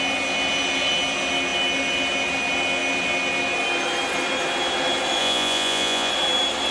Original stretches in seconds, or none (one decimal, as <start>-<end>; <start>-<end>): 0.0-5.2; 6.1-6.7